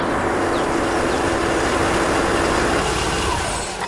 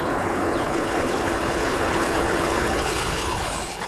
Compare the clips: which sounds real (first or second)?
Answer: first